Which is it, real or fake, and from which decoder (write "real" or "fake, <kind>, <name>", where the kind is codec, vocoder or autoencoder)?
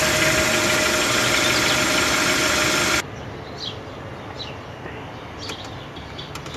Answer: real